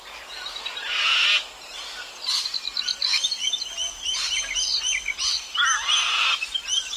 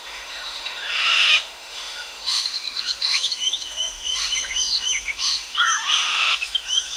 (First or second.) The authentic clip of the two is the first